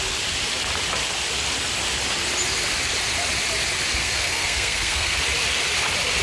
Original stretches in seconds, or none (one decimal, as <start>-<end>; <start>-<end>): 0.0-4.0; 5.2-6.2